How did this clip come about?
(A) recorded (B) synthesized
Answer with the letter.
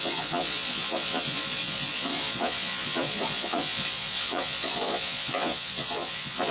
B